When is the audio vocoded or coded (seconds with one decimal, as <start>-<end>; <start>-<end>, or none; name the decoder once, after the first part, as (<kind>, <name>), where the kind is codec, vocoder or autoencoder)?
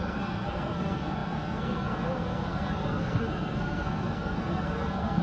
0.0-5.2 (codec, SNAC)